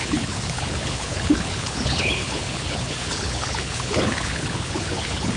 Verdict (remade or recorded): remade